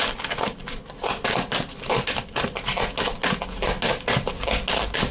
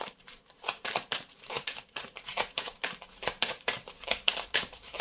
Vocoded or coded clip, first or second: second